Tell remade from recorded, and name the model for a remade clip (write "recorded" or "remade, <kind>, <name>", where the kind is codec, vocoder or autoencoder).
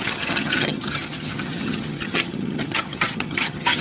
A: remade, vocoder, HiFi-GAN